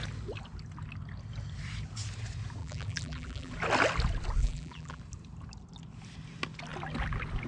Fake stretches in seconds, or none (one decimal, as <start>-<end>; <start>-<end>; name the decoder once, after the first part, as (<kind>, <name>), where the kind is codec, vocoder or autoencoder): 2.6-3.5 (vocoder, BigVGAN v2); 4.4-5.0